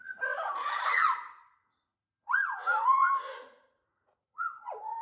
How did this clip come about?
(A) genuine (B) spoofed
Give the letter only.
B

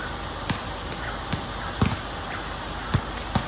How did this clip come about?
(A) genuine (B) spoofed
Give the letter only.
A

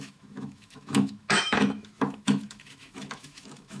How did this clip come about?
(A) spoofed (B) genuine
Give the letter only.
A